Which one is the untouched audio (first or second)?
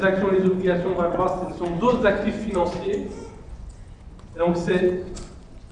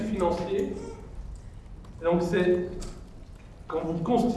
second